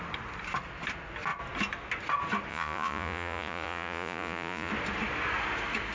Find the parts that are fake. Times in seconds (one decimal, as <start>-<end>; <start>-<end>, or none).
2.5-4.7